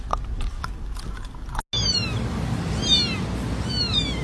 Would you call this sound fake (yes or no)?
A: no